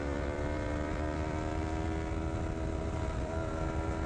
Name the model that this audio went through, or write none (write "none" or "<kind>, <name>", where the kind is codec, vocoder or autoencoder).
vocoder, BigVGAN v2